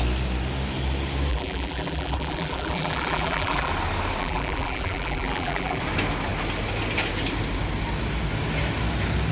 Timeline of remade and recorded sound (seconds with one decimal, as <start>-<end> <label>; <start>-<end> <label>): 0.0-1.3 recorded; 1.3-3.7 remade; 3.7-4.2 recorded; 4.2-5.8 remade; 5.8-9.3 recorded